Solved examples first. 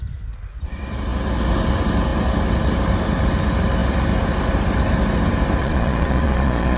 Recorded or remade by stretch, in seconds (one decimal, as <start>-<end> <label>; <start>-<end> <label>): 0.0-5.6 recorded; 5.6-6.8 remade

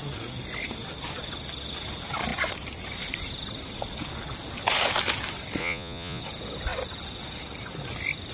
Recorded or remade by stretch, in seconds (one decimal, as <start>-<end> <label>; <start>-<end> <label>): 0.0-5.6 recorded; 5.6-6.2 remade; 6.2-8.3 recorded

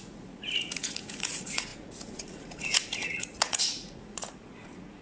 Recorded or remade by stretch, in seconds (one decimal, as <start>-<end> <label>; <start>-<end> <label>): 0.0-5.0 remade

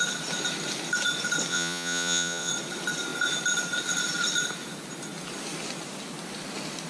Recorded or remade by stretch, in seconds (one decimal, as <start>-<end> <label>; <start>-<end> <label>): 0.0-1.5 recorded; 1.5-2.5 remade; 2.5-6.9 recorded